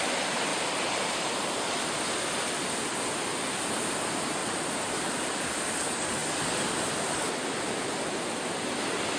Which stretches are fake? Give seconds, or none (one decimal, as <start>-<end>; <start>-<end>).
0.5-1.3; 4.4-4.9